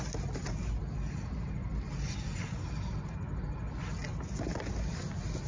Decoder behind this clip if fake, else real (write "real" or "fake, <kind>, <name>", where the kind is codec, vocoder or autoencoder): real